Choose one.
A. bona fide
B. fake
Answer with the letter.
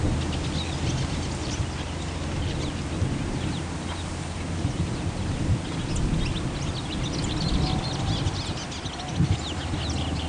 A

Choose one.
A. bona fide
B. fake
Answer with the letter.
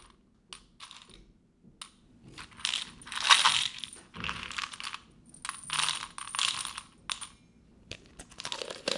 A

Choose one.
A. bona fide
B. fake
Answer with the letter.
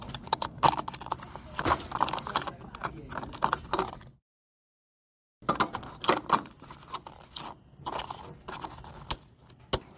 A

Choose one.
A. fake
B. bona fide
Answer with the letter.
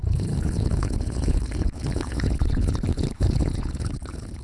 A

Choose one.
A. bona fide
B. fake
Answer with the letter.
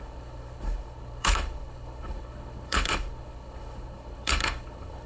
B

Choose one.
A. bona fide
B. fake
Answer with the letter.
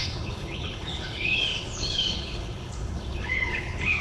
B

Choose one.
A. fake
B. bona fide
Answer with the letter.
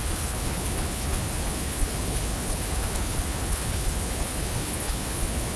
A